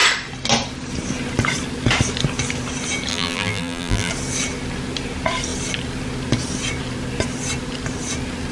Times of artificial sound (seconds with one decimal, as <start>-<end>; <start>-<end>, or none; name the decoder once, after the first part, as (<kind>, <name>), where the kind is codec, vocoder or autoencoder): 3.1-4.1 (vocoder, BigVGAN v2)